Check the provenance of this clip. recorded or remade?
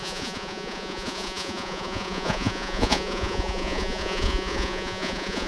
remade